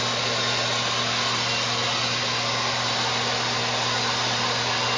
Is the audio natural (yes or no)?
yes